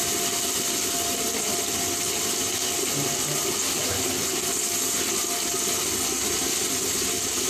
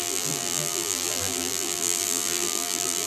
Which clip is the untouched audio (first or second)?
first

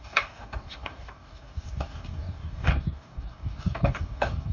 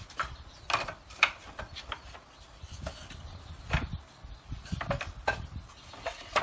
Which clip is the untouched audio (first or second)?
second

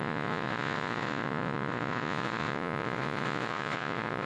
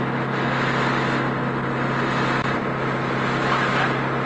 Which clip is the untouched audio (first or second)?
second